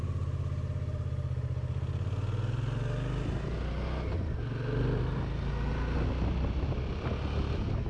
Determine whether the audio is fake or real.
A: real